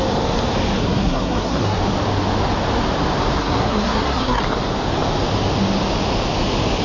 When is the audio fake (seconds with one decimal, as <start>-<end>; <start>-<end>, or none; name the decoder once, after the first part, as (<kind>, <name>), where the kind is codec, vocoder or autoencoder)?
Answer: 0.8-1.8 (codec, SNAC); 3.4-4.4